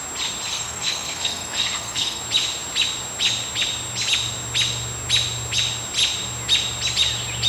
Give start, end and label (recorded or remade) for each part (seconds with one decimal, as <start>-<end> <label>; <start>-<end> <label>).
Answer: 0.0-0.5 recorded; 0.5-2.2 remade; 2.2-7.5 recorded